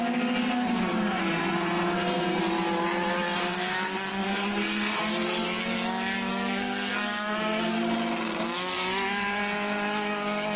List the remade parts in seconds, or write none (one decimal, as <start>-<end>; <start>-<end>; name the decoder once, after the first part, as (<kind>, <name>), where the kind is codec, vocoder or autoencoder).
1.2-2.4 (codec, SNAC); 3.4-5.0; 6.3-7.7